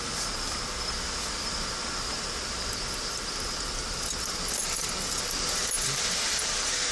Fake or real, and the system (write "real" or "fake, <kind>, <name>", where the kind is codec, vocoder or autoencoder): real